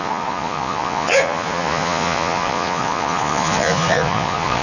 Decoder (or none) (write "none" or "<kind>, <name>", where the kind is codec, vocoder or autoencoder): vocoder, Vocos